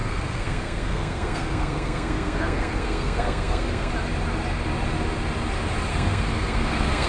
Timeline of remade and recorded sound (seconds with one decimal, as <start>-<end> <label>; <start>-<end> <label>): 0.0-3.9 remade; 3.9-5.9 recorded; 5.9-7.1 remade